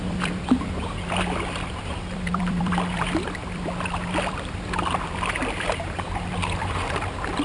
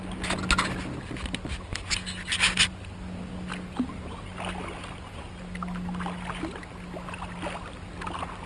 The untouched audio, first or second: second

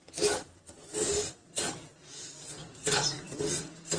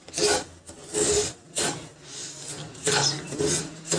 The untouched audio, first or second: second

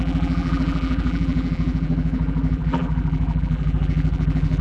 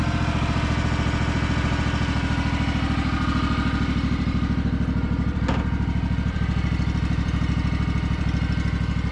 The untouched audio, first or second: second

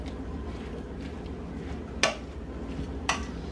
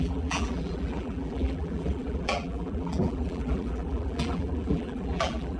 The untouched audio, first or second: first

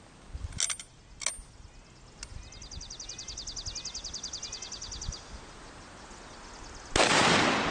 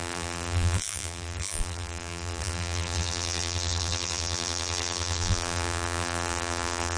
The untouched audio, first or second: first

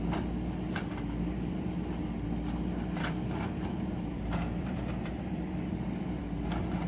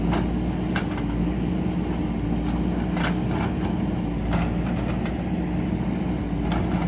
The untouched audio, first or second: second